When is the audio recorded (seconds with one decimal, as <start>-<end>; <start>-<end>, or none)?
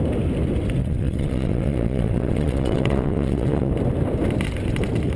0.0-0.8; 3.7-5.2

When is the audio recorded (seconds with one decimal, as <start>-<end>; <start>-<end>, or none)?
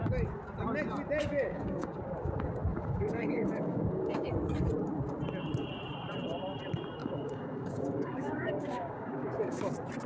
0.0-1.2; 2.0-2.7; 4.3-7.0; 9.7-10.1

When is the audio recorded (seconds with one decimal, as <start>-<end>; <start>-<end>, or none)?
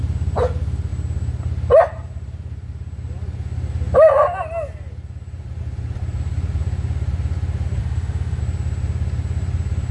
0.0-7.8; 8.4-9.9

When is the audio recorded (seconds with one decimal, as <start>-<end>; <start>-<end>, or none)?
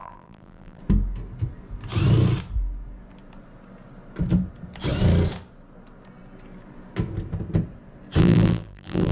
0.8-8.2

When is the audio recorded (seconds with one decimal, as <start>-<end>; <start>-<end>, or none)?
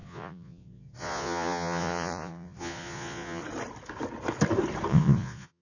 3.4-4.9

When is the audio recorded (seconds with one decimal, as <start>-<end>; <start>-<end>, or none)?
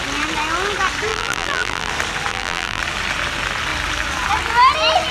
0.0-1.1; 1.9-2.3; 2.8-5.1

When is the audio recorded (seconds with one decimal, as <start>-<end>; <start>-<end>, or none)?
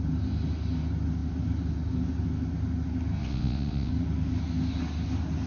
0.0-3.2; 3.9-5.5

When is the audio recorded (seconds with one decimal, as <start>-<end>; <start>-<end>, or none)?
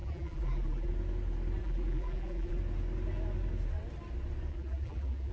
0.9-1.6; 2.6-4.5